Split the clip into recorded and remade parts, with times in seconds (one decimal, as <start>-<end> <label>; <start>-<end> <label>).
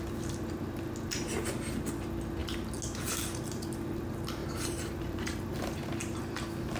0.0-4.4 recorded; 4.4-6.2 remade; 6.2-6.8 recorded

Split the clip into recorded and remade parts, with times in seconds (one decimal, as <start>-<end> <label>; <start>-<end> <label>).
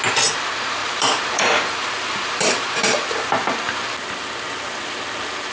0.0-0.8 recorded; 0.8-3.3 remade; 3.3-5.5 recorded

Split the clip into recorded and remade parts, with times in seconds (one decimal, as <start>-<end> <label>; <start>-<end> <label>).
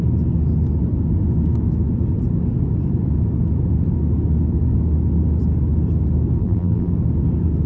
0.0-6.4 recorded; 6.4-6.9 remade; 6.9-7.7 recorded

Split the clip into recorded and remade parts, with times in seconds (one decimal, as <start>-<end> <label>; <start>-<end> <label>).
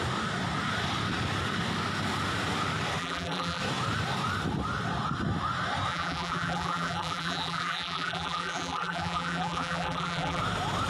0.0-3.0 recorded; 3.0-3.6 remade; 3.6-5.9 recorded; 5.9-10.4 remade; 10.4-10.9 recorded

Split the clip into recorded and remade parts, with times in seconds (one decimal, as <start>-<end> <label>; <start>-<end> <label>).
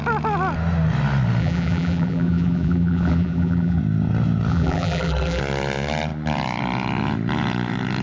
0.0-1.4 recorded; 1.4-3.8 remade; 3.8-4.5 recorded; 4.5-5.4 remade; 5.4-8.0 recorded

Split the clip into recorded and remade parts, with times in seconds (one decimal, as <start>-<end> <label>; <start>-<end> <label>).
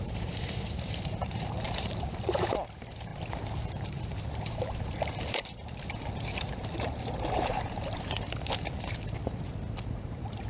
0.0-3.1 remade; 3.1-3.7 recorded; 3.7-10.5 remade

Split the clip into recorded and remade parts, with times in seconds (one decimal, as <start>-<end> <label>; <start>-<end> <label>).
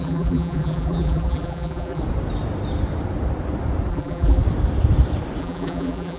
0.0-2.0 remade; 2.0-3.9 recorded; 3.9-4.4 remade; 4.4-5.4 recorded; 5.4-6.2 remade